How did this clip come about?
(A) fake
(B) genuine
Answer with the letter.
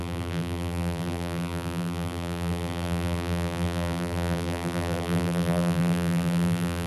A